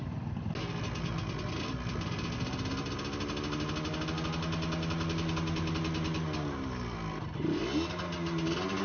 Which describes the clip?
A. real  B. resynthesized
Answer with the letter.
A